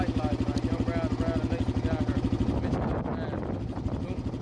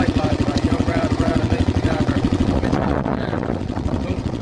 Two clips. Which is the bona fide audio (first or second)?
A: first